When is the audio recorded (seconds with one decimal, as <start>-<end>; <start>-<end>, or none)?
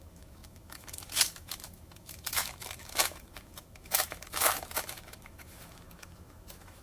none